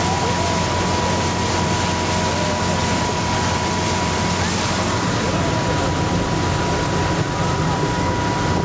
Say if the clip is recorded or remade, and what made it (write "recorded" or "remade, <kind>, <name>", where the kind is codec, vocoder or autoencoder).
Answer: recorded